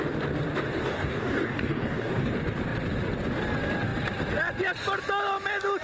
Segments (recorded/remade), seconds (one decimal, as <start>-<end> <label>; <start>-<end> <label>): 0.0-0.8 recorded; 0.8-2.3 remade; 2.3-5.8 recorded